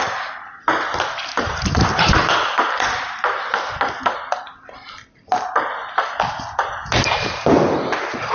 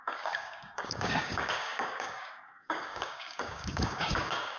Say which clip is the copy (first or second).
second